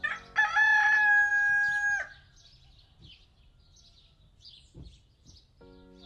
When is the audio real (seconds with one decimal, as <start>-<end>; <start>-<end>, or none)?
0.0-6.1